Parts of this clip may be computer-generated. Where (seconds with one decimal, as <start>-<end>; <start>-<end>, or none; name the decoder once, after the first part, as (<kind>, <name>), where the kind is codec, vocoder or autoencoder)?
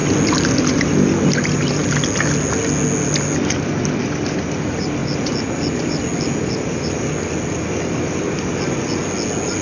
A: none